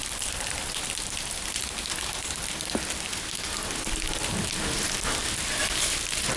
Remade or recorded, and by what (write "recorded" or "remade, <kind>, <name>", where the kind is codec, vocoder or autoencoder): remade, vocoder, BigVGAN v2